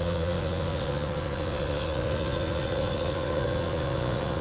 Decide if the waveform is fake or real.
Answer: fake